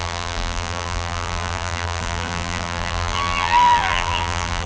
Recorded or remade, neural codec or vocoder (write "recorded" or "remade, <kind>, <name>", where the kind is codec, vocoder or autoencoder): remade, vocoder, BigVGAN v2